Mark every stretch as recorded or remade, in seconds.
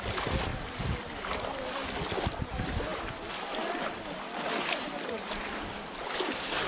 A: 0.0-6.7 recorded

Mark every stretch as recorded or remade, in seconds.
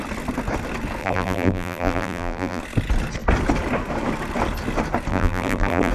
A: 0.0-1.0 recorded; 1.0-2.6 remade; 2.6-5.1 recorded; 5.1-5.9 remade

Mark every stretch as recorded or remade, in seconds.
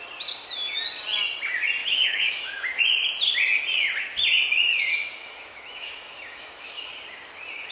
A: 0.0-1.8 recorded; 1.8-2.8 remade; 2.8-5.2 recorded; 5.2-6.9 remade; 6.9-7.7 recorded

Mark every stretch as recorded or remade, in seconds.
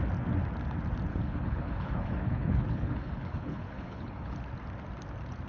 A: 0.0-1.1 recorded; 1.1-4.4 remade; 4.4-5.5 recorded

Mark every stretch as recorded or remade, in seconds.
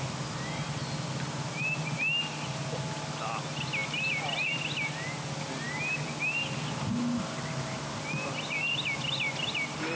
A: 0.0-10.0 recorded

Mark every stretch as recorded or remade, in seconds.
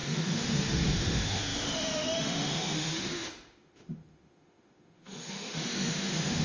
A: 0.0-6.4 remade